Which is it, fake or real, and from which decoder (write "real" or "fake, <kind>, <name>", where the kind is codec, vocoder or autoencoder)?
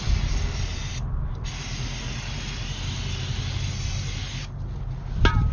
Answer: real